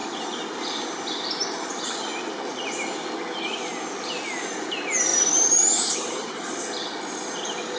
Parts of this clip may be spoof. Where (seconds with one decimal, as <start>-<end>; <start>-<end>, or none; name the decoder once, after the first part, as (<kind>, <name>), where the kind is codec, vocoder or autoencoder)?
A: 5.1-6.5 (vocoder, BigVGAN v2)